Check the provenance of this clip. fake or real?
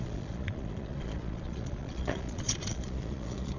fake